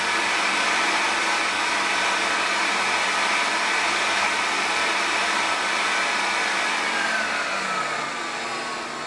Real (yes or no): yes